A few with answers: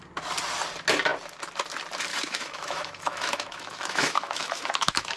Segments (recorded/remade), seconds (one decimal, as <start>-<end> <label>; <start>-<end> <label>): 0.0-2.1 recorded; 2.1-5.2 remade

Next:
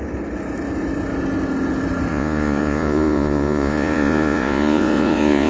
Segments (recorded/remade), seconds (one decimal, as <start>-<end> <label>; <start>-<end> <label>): 0.0-2.1 recorded; 2.1-5.5 remade

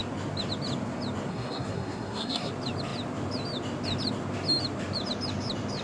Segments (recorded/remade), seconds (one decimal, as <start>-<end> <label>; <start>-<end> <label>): 0.0-1.3 recorded; 1.3-2.5 remade; 2.5-5.8 recorded